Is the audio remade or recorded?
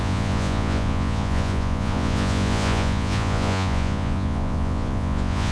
remade